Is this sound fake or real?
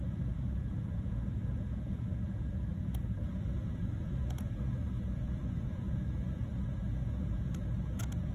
fake